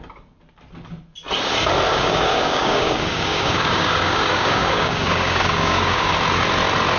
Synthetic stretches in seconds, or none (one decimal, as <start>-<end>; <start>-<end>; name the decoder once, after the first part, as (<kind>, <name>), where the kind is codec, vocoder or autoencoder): 1.9-6.1 (codec, DAC)